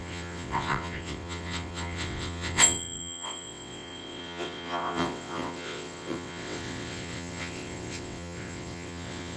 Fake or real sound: fake